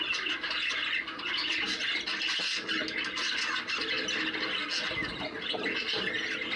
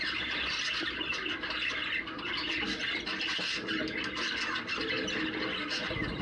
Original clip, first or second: first